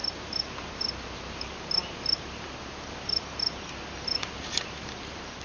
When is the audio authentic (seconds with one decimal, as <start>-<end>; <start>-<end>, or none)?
0.0-5.4